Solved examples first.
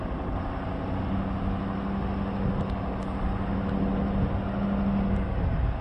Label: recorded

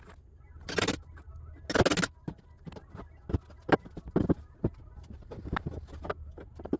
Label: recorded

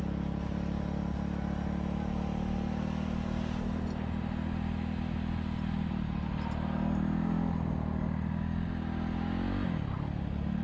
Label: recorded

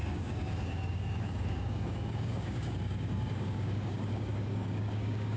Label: remade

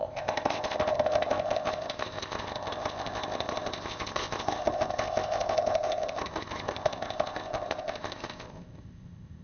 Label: remade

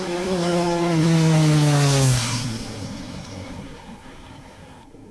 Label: remade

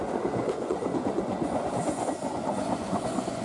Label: remade